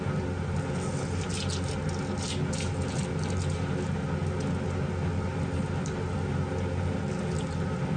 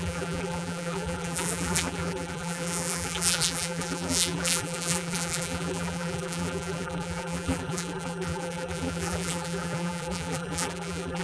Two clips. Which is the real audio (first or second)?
first